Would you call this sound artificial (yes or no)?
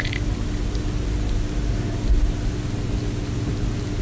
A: no